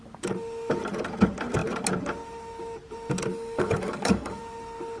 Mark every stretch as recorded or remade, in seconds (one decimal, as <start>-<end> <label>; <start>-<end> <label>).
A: 0.0-3.3 recorded; 3.3-4.4 remade; 4.4-5.0 recorded